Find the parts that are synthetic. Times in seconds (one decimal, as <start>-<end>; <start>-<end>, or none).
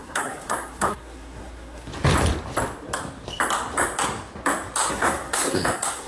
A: 0.0-1.9; 4.9-6.1